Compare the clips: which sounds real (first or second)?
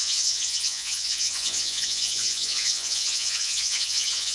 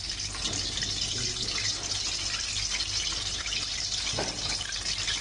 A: second